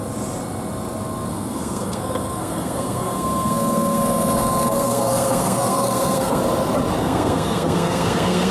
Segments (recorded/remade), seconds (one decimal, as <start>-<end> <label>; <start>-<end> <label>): 0.0-1.3 recorded; 1.3-6.4 remade; 6.4-7.0 recorded; 7.0-8.5 remade